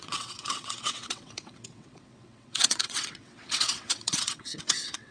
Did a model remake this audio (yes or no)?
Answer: yes